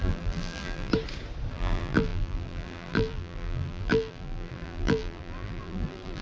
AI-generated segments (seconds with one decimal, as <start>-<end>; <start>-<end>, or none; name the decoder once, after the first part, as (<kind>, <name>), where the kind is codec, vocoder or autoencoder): 0.0-0.9 (vocoder, BigVGAN v2); 1.5-6.2